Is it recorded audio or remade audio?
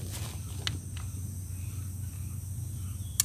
recorded